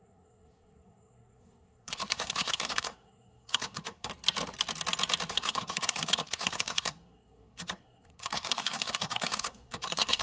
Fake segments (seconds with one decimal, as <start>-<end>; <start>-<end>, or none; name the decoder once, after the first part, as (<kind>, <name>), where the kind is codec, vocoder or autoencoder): 0.0-4.1 (codec, SNAC); 5.3-10.2

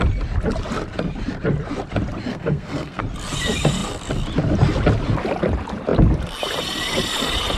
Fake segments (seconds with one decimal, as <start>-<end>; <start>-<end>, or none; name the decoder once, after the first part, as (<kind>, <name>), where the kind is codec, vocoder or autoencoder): 2.3-3.0 (codec, SNAC)

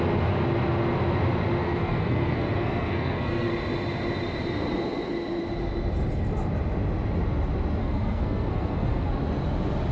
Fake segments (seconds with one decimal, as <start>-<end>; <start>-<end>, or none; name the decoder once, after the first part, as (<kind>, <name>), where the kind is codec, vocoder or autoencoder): 1.6-3.5 (codec, SNAC); 7.8-9.1

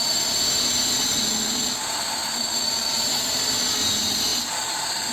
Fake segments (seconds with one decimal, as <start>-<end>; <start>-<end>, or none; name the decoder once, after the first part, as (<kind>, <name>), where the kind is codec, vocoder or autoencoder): none